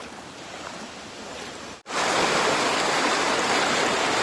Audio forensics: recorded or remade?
recorded